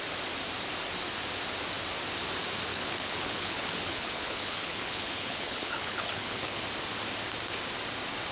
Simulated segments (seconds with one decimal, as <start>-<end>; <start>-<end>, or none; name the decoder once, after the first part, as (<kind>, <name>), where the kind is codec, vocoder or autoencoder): 2.7-6.6 (codec, HILCodec)